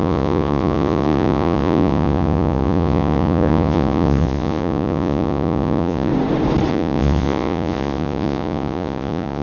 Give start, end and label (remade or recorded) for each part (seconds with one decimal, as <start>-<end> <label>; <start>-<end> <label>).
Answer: 0.0-6.1 remade; 6.1-6.7 recorded; 6.7-9.4 remade